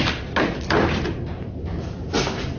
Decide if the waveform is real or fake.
real